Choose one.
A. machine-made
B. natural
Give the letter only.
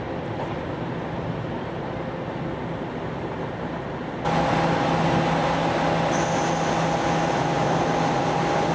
B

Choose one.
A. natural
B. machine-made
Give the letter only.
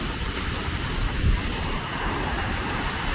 B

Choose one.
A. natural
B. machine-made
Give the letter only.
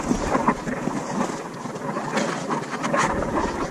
A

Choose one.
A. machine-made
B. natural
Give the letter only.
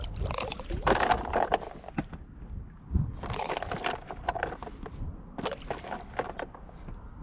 B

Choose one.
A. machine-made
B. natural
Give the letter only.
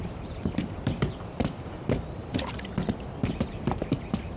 A